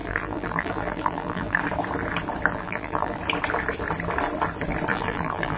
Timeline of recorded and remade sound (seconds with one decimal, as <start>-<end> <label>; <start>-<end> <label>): 0.0-1.6 remade; 1.6-2.5 recorded; 2.5-3.2 remade; 3.2-4.9 recorded; 4.9-5.6 remade